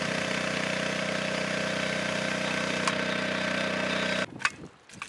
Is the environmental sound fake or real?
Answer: real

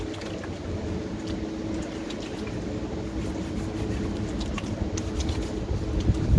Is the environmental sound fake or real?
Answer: real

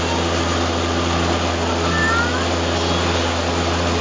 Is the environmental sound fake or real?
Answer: real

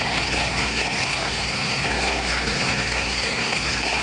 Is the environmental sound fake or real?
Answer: fake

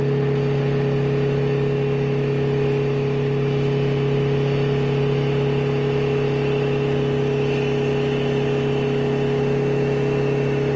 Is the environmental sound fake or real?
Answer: real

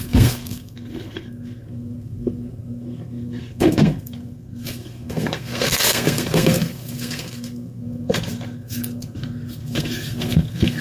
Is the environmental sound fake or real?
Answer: fake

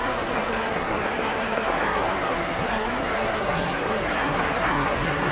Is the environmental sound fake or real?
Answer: fake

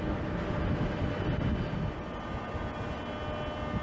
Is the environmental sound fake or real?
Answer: real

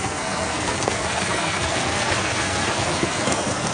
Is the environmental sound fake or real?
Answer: fake